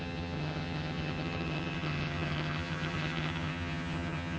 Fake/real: fake